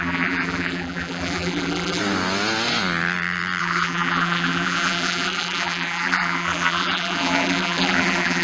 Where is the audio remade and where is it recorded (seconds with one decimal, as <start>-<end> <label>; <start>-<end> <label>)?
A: 0.0-2.0 remade; 2.0-3.6 recorded; 3.6-8.4 remade